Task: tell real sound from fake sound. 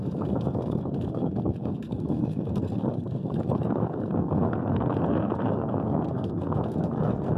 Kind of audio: fake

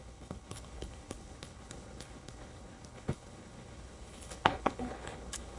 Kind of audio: fake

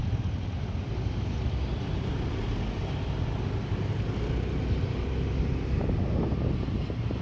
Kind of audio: real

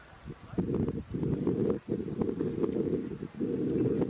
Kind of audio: real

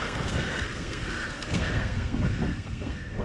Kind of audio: fake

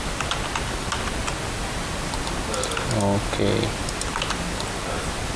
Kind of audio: real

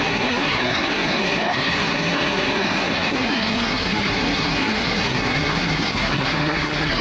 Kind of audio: fake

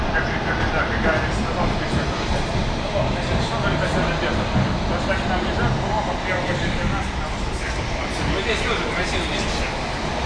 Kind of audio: real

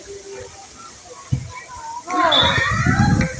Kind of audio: real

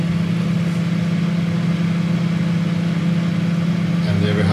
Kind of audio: real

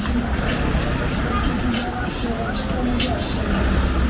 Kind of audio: real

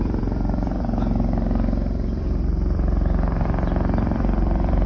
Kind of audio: fake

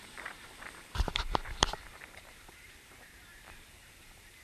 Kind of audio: fake